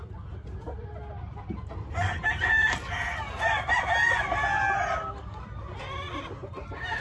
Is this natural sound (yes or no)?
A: yes